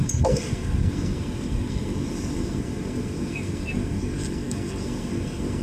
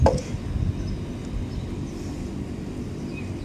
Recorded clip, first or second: second